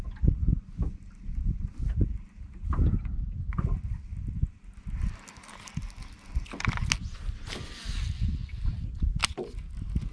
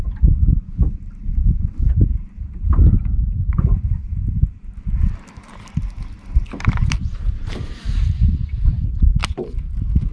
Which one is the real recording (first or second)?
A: first